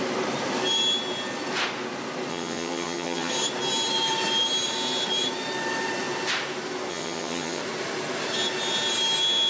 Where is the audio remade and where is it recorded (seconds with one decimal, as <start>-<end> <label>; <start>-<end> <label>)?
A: 0.0-2.3 recorded; 2.3-3.3 remade; 3.3-6.9 recorded; 6.9-7.6 remade; 7.6-9.5 recorded